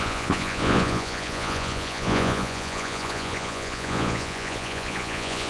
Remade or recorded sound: remade